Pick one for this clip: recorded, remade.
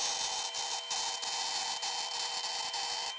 recorded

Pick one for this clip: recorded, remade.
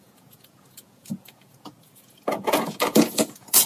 remade